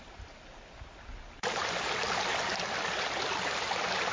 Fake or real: real